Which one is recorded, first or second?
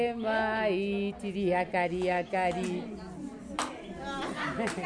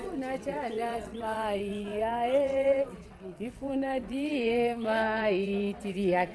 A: first